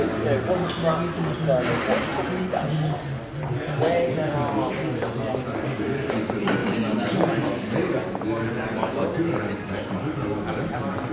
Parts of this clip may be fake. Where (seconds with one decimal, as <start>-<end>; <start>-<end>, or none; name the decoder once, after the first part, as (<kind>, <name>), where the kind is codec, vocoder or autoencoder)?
none